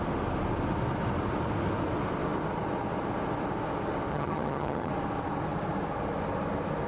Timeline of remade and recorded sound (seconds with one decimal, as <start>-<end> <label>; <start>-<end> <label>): 0.0-4.1 recorded; 4.1-4.9 remade; 4.9-6.9 recorded